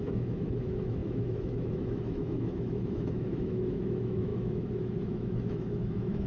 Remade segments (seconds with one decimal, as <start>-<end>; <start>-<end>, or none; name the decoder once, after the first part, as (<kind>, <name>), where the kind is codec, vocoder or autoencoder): 0.0-6.3 (autoencoder, DAC-VAE)